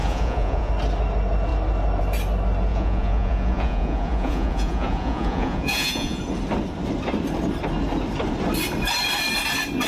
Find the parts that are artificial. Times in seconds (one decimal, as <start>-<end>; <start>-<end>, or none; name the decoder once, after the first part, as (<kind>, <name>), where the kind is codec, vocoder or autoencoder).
0.0-0.7 (vocoder, Vocos); 2.7-6.2